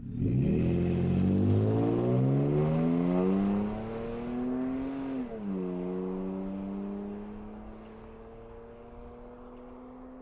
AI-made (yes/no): no